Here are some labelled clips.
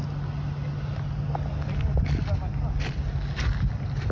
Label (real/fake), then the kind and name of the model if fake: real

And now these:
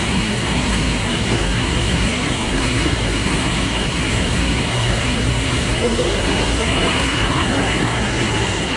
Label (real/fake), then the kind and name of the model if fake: fake, codec, SNAC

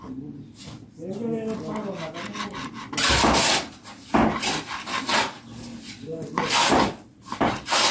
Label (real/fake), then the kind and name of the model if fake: real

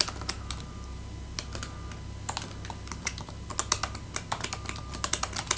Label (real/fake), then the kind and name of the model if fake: real